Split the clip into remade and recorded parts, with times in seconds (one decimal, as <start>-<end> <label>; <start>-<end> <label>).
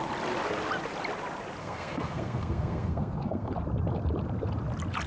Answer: 0.0-1.6 recorded; 1.6-3.5 remade; 3.5-5.1 recorded